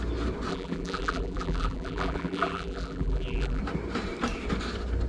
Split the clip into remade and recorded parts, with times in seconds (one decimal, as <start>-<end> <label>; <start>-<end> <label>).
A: 0.0-0.5 recorded; 0.5-3.6 remade; 3.6-5.1 recorded